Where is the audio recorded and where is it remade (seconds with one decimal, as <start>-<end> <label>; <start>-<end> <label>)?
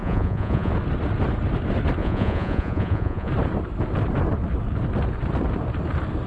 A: 0.0-0.7 remade; 0.7-2.0 recorded; 2.0-3.3 remade; 3.3-6.3 recorded